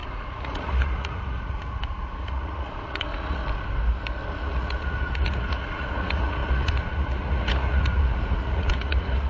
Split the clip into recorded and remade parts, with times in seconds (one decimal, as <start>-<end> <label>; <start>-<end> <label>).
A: 0.0-3.4 remade; 3.4-4.3 recorded; 4.3-9.3 remade